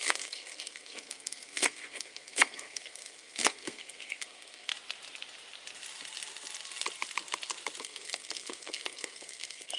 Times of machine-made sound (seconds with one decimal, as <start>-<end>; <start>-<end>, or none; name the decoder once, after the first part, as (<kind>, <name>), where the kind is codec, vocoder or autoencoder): 0.0-4.7 (codec, SNAC); 7.8-9.8

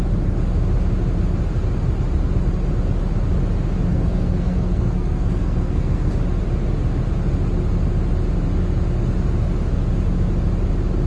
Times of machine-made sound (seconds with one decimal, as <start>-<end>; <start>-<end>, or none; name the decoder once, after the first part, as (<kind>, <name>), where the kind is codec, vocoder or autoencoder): 3.9-6.1 (codec, SNAC)

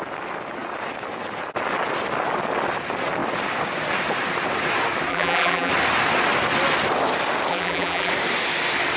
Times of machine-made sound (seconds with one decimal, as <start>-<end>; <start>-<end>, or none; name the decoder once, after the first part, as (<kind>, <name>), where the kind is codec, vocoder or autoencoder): 5.1-5.7 (vocoder, BigVGAN v2); 7.5-8.1